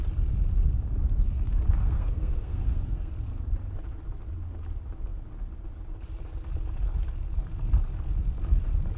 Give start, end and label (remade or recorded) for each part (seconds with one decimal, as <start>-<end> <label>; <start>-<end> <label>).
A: 0.0-1.8 recorded; 1.8-3.1 remade; 3.1-9.0 recorded